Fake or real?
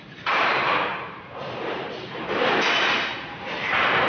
fake